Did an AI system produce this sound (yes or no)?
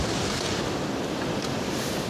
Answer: yes